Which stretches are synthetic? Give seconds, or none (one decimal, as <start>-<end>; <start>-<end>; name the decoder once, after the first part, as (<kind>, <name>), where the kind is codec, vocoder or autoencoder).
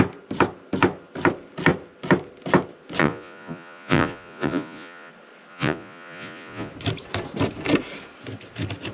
3.0-5.1 (vocoder, Vocos); 5.5-6.7